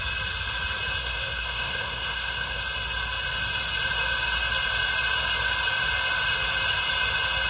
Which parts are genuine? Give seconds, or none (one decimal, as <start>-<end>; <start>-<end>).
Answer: 0.0-1.0; 2.6-7.5